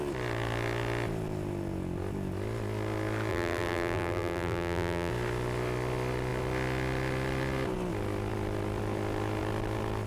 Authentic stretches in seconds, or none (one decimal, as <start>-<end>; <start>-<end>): 0.0-3.3; 5.1-10.1